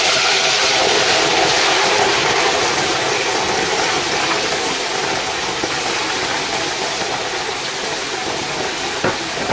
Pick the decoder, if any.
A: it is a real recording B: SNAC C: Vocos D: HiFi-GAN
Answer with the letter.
A